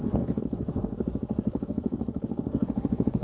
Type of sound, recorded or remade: remade